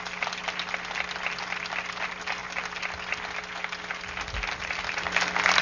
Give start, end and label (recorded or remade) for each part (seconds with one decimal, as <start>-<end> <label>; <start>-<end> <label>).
0.0-5.6 recorded